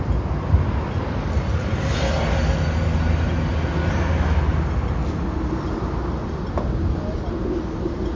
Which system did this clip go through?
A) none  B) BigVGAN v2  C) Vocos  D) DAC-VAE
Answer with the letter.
A